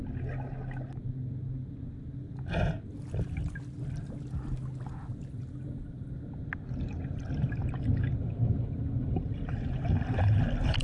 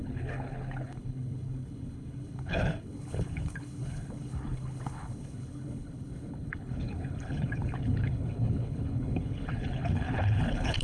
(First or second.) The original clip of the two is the first